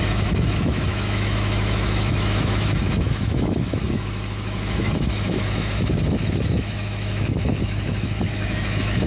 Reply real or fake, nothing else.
fake